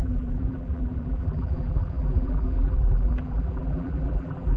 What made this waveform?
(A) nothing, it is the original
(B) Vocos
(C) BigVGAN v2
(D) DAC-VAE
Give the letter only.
C